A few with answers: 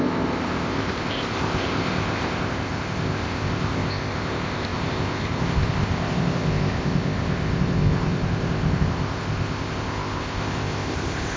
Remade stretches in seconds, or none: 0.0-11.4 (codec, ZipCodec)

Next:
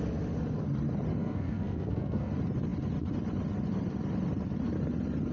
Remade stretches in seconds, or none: 1.2-2.3 (codec, SNAC)

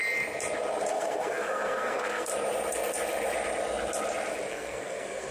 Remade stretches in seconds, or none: 0.9-2.3 (codec, SNAC); 4.5-5.3

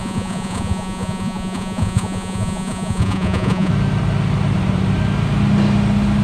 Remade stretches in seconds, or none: 0.0-3.7 (vocoder, Vocos)

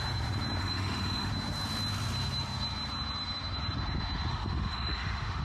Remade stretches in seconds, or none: 0.6-1.3 (autoencoder, DAC-VAE); 4.3-5.4

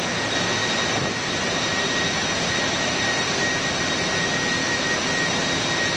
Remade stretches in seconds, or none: 4.6-5.3 (autoencoder, DAC-VAE)

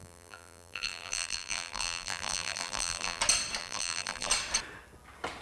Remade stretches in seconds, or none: 0.0-3.2 (vocoder, BigVGAN v2); 3.6-4.3